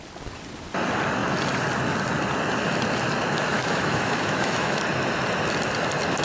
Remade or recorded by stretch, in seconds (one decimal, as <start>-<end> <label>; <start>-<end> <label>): 0.0-3.5 recorded; 3.5-4.8 remade; 4.8-6.2 recorded